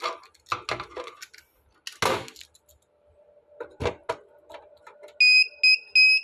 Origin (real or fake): real